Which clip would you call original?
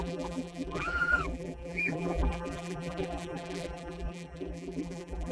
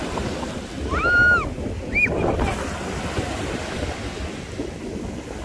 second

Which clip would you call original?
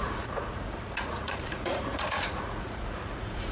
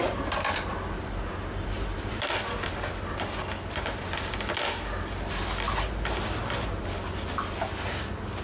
second